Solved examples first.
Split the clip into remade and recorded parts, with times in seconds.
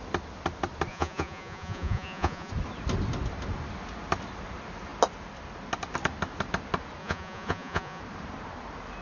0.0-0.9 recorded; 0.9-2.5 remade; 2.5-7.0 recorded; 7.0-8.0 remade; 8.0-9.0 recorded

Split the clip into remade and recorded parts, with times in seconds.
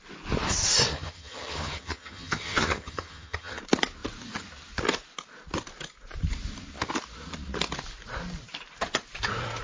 0.0-0.9 recorded; 0.9-3.6 remade; 3.6-9.6 recorded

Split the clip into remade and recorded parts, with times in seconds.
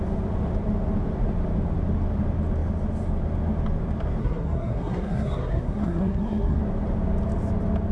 0.0-4.2 recorded; 4.2-6.6 remade; 6.6-7.9 recorded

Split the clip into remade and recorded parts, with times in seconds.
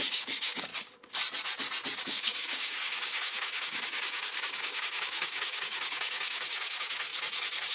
0.0-0.7 remade; 0.7-2.0 recorded; 2.0-7.1 remade; 7.1-7.7 recorded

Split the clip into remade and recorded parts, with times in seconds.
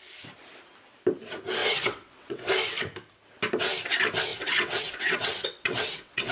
0.0-1.6 recorded; 1.6-2.5 remade; 2.5-4.3 recorded; 4.3-6.3 remade